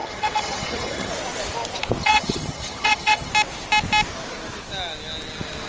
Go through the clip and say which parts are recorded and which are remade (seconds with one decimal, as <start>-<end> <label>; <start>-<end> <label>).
0.0-1.1 remade; 1.1-2.0 recorded; 2.0-3.3 remade; 3.3-5.7 recorded